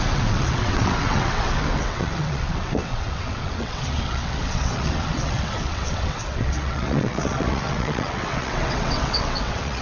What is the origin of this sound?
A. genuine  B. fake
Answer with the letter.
B